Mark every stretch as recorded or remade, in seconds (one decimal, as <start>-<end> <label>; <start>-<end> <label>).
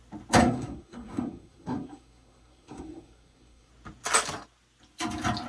0.0-0.4 recorded; 0.4-3.7 remade; 3.7-5.5 recorded